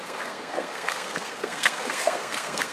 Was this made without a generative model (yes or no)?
no